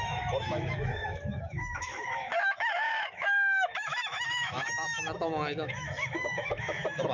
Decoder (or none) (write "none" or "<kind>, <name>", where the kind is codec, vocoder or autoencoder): autoencoder, DAC-VAE